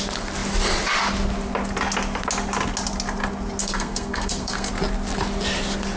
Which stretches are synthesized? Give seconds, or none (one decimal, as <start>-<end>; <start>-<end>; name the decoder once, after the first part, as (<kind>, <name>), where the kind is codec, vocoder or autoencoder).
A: 3.6-4.7 (codec, SNAC)